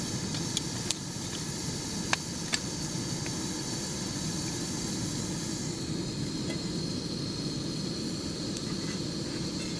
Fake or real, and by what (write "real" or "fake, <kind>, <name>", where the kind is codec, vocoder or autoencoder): real